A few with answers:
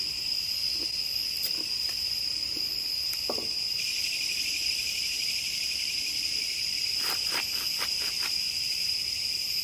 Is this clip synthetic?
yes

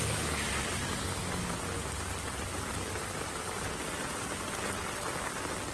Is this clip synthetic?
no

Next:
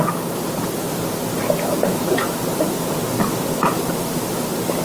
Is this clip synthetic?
no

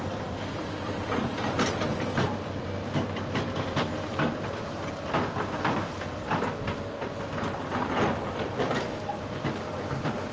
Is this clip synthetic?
yes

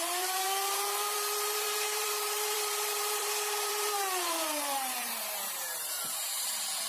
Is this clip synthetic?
yes